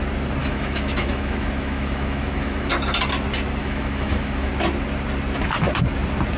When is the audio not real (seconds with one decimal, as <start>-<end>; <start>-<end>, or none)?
0.4-2.7; 3.6-4.5